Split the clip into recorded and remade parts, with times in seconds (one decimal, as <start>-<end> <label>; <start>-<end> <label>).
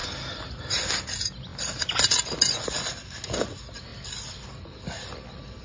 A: 0.0-5.6 recorded